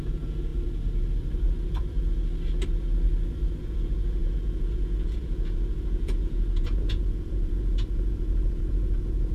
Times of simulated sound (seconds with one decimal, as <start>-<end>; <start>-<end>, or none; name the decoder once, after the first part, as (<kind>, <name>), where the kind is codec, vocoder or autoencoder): 0.0-0.5 (vocoder, Vocos); 3.6-9.3